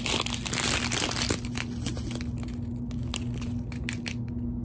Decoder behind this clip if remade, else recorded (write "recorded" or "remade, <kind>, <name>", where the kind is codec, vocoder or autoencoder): recorded